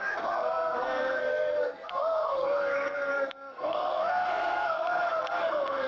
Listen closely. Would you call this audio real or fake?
fake